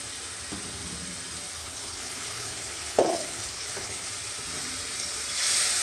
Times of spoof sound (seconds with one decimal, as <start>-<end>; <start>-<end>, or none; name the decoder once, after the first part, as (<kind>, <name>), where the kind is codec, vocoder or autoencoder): 1.6-4.1 (codec, HILCodec)